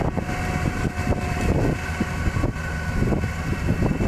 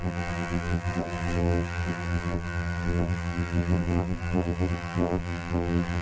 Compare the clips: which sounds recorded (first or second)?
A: first